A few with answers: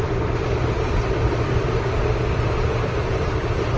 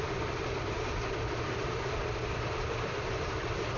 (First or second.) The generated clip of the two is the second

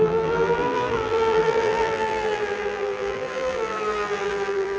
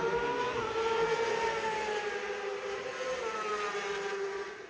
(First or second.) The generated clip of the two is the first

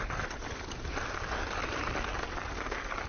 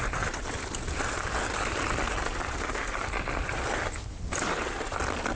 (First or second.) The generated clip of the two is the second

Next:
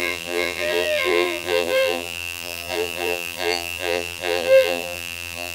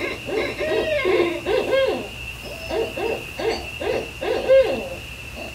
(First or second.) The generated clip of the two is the first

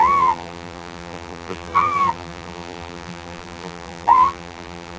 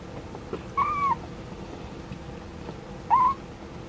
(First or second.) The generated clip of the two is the first